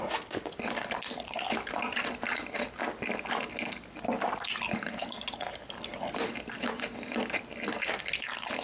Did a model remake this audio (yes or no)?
no